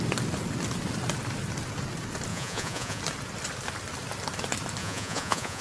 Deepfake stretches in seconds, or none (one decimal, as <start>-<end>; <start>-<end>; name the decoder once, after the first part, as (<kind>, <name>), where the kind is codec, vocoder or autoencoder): 2.3-3.0 (vocoder, Vocos); 4.8-5.6